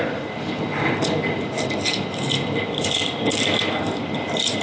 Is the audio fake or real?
real